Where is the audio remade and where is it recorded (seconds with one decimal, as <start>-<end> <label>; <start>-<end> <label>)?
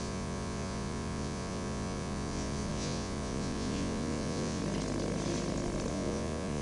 0.0-4.6 remade; 4.6-5.9 recorded; 5.9-6.6 remade